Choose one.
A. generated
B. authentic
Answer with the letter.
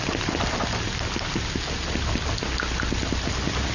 B